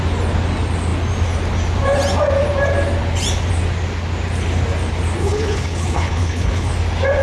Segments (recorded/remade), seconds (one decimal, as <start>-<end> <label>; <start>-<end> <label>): 0.0-5.2 recorded; 5.2-6.7 remade; 6.7-7.2 recorded